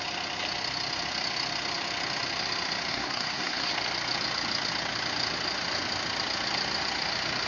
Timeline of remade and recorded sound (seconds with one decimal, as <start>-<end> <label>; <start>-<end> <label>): 0.0-2.9 recorded; 2.9-3.7 remade; 3.7-7.5 recorded